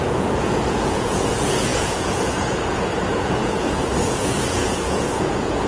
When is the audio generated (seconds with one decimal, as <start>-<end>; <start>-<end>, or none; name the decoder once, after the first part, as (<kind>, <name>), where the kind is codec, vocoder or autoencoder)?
0.0-5.7 (vocoder, Vocos)